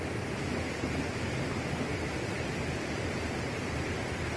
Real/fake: real